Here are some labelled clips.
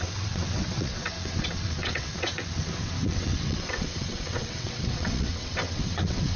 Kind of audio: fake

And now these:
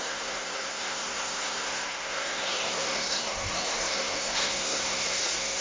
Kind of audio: fake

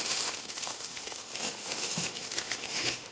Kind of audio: fake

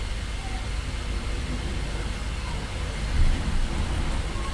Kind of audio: real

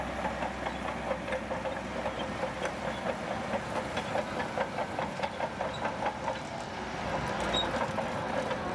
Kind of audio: real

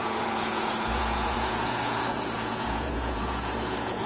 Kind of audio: fake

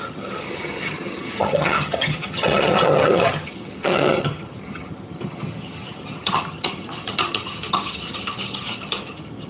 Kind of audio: fake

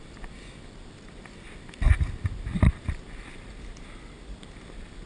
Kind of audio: real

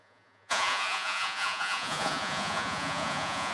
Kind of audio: fake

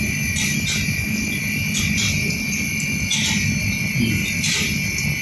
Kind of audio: real